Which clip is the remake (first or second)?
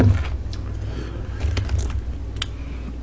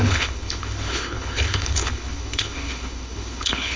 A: second